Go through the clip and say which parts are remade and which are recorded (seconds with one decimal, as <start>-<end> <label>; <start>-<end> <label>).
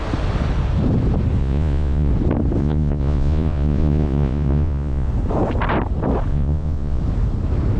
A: 0.0-1.4 recorded; 1.4-2.1 remade; 2.1-2.6 recorded; 2.6-5.1 remade; 5.1-6.3 recorded; 6.3-7.0 remade; 7.0-7.8 recorded